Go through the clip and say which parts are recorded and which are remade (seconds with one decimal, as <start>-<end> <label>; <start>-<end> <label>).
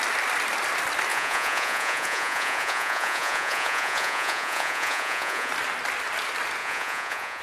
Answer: 0.0-1.1 recorded; 1.1-5.5 remade; 5.5-6.6 recorded; 6.6-7.4 remade